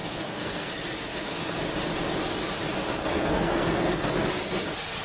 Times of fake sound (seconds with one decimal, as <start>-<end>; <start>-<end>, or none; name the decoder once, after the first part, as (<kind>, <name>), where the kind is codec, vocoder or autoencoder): 0.0-0.7 (codec, SNAC); 1.1-1.6; 3.0-4.1